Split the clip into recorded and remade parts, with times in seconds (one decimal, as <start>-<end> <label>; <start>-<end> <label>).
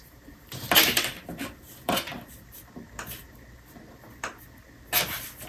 0.0-2.1 remade; 2.1-5.5 recorded